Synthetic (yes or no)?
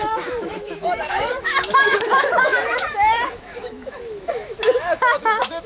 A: yes